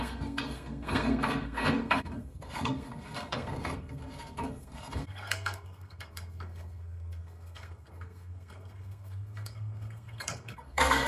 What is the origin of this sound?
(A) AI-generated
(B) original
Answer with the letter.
A